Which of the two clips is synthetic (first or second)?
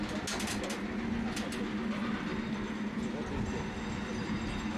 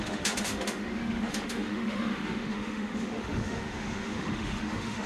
second